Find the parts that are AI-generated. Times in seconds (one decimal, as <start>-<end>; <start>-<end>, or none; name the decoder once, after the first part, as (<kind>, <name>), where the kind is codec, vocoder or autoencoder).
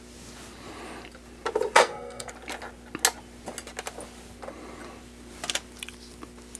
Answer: 1.8-2.3 (codec, SNAC)